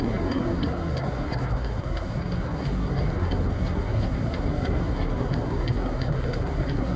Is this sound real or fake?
fake